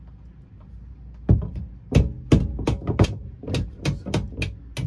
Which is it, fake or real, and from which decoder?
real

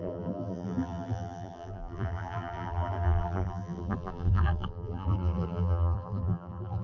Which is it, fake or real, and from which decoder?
fake, vocoder, BigVGAN v2